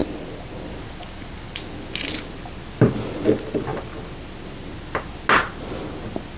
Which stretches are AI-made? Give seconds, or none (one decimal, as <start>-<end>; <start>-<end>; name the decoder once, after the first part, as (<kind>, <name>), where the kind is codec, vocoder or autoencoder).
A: none